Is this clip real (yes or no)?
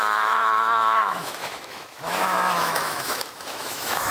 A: no